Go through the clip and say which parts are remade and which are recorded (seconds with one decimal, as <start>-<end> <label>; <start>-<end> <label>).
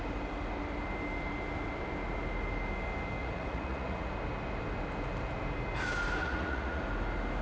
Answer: 0.0-3.2 recorded; 3.2-4.1 remade; 4.1-6.2 recorded; 6.2-6.8 remade; 6.8-7.4 recorded